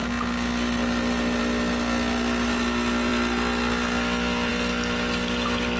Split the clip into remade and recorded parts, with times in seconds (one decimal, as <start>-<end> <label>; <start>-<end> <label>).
0.0-5.8 recorded